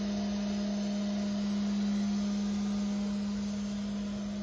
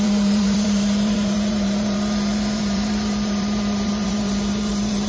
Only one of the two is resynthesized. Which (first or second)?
second